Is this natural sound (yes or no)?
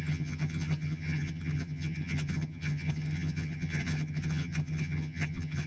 no